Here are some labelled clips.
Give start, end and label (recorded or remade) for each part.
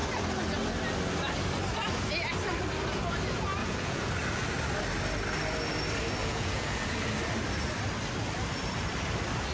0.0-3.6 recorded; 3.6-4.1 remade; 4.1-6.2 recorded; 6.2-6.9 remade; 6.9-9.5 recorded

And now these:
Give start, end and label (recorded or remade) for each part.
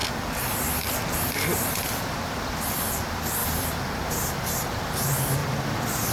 0.0-1.3 recorded; 1.3-6.1 remade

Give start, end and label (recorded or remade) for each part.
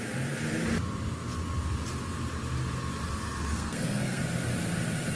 0.0-3.5 recorded; 3.5-4.2 remade; 4.2-5.2 recorded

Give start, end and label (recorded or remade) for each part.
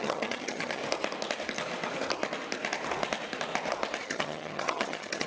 0.0-0.8 remade; 0.8-4.0 recorded; 4.0-5.3 remade